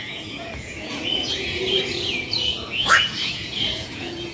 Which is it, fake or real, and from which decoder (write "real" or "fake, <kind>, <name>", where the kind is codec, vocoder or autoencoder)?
fake, vocoder, Vocos